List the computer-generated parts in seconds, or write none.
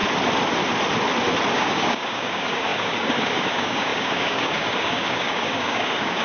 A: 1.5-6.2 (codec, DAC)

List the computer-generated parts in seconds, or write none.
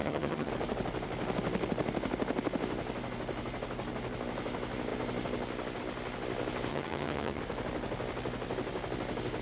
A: 0.0-0.5 (vocoder, HiFi-GAN); 6.7-7.4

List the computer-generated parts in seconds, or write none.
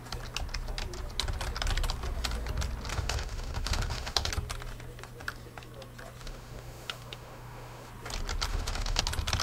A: 2.9-4.3 (autoencoder, DAC-VAE); 6.2-7.9; 8.5-9.0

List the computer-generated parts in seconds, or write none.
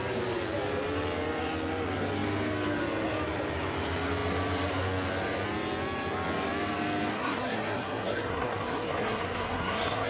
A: 7.1-10.1 (codec, SNAC)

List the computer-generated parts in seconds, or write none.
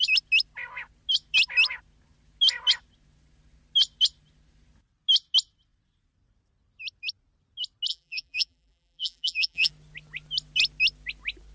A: 7.9-9.7 (vocoder, BigVGAN v2)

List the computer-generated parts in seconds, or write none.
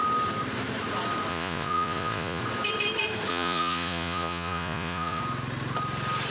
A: 1.3-2.4 (vocoder, Vocos); 3.3-5.2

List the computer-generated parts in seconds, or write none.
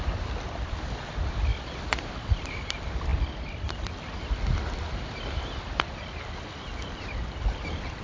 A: none